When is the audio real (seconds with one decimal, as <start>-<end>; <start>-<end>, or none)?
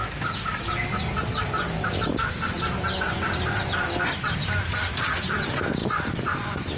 0.0-5.8